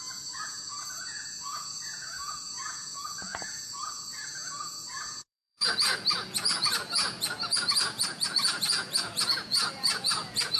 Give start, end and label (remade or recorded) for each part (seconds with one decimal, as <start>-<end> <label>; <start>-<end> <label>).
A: 0.0-10.6 remade